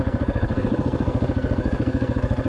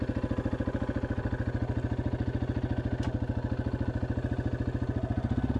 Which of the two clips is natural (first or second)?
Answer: second